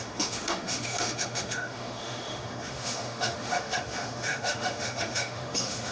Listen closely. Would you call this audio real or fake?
fake